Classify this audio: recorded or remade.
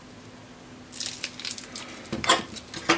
recorded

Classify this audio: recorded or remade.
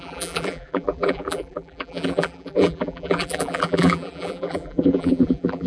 remade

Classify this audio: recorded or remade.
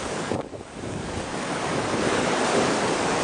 remade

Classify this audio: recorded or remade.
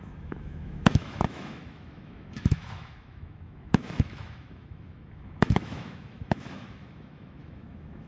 remade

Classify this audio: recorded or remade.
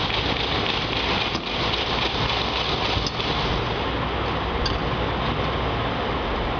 recorded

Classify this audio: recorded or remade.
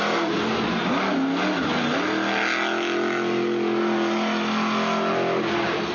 recorded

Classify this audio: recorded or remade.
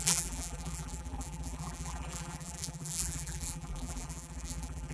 remade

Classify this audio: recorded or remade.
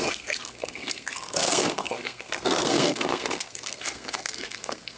remade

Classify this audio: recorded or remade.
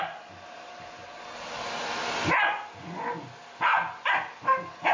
recorded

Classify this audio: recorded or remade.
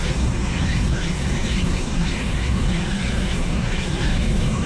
remade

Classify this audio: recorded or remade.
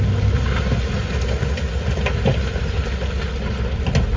recorded